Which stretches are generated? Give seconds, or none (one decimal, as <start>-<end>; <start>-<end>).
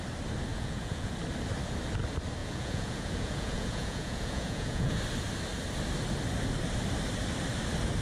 0.5-1.1; 2.4-5.0